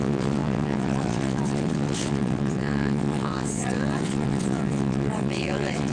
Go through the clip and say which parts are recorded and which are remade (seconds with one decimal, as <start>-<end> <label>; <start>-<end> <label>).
0.0-5.9 remade